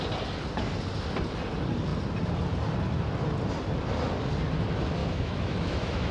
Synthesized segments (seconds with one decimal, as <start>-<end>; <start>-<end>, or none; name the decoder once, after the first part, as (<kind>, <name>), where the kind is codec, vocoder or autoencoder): 5.0-6.1 (autoencoder, DAC-VAE)

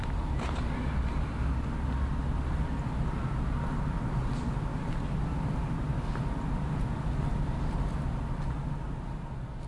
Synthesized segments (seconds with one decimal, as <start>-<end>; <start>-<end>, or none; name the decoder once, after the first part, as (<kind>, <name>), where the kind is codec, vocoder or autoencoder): none